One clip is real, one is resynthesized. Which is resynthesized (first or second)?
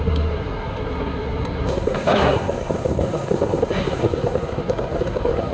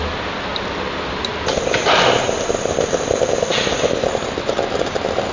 first